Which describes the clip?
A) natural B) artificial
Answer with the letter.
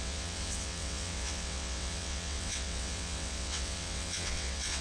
B